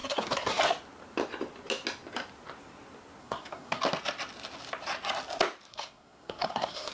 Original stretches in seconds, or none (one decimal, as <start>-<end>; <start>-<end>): 0.6-3.2; 3.8-5.7